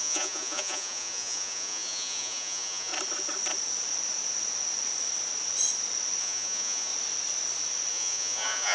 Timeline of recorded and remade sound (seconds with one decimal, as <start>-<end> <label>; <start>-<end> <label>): 0.0-2.9 remade; 2.9-6.2 recorded; 6.2-6.9 remade; 6.9-7.9 recorded; 7.9-8.7 remade